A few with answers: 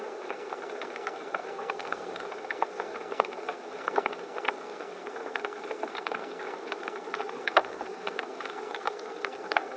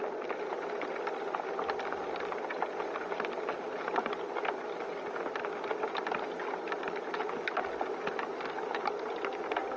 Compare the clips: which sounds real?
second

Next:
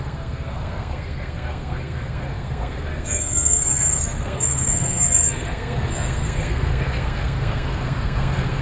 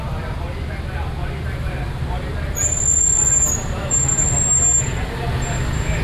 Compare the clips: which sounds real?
second